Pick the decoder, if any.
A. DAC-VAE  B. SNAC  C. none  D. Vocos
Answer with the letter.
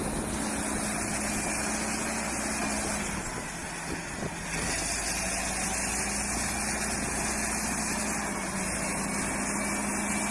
C